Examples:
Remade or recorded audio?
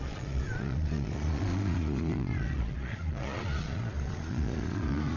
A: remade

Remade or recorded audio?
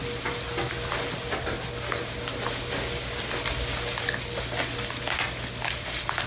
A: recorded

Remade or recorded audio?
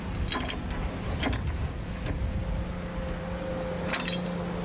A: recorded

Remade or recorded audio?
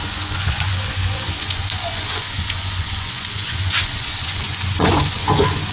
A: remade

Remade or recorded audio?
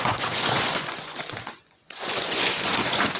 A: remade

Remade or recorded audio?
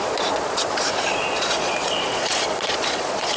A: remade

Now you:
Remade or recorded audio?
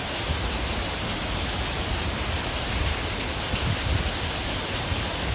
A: recorded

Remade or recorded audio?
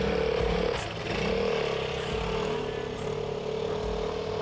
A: recorded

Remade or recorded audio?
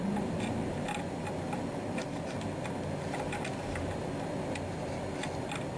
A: recorded